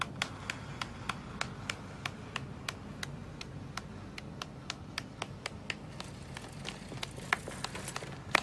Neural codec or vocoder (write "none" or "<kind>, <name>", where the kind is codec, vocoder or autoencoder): none